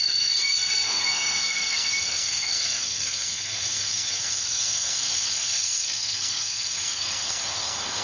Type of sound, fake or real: fake